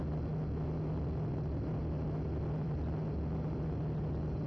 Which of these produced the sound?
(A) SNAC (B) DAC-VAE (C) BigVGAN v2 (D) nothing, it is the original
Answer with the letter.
D